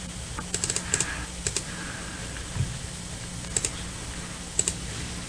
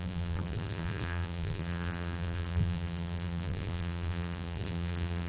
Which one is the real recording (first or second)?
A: first